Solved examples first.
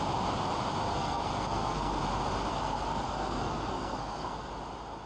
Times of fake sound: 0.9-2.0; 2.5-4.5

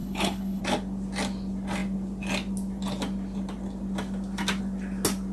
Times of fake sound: 0.0-0.6

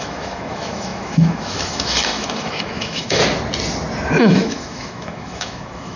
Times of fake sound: 0.0-3.2; 4.2-6.0

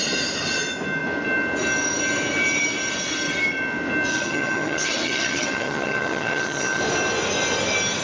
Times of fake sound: 4.1-6.8

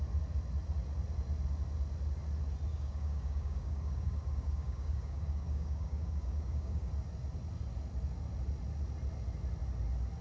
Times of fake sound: 2.7-6.9

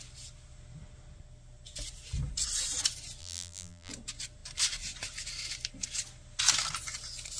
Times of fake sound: 3.2-3.9

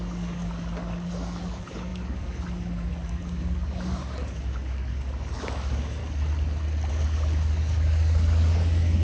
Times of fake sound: 0.0-6.0; 6.9-9.0

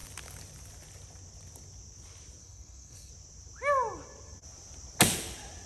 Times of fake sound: 2.4-3.1